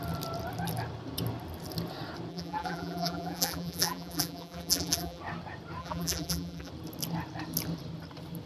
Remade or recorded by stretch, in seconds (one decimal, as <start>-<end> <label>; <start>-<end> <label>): 0.0-2.3 recorded; 2.3-5.2 remade; 5.2-5.8 recorded; 5.8-6.7 remade; 6.7-8.5 recorded